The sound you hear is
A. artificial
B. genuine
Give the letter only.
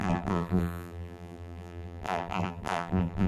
A